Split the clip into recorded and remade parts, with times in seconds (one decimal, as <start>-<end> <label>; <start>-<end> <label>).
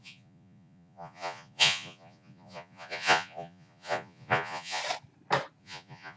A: 0.0-4.8 remade; 4.8-5.6 recorded; 5.6-6.2 remade